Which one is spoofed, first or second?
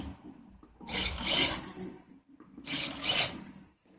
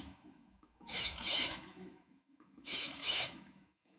second